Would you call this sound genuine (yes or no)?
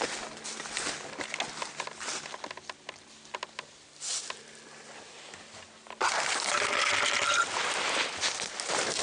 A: yes